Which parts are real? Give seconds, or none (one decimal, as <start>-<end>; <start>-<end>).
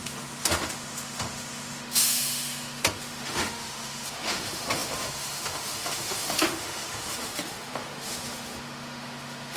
none